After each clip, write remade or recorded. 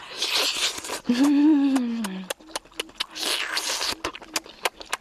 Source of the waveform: recorded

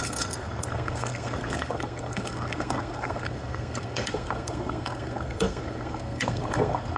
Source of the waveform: remade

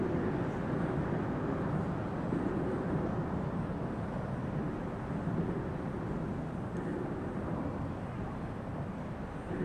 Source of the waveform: recorded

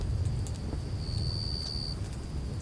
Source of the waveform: recorded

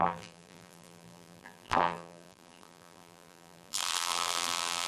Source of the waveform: remade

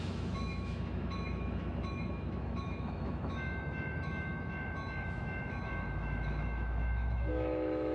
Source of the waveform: remade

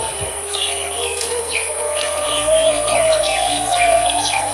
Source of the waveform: remade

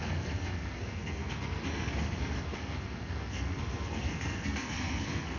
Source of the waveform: remade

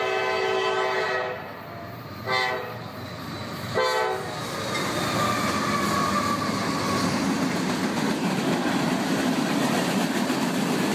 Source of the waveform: recorded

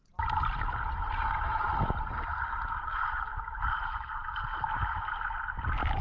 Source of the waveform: recorded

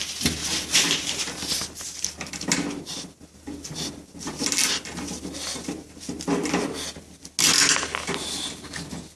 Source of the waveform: recorded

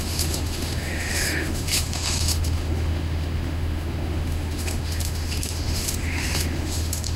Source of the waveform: remade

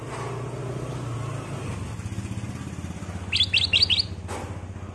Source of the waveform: recorded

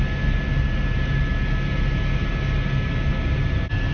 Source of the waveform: recorded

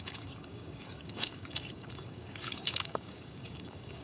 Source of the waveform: remade